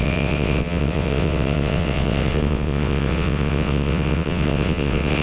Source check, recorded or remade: remade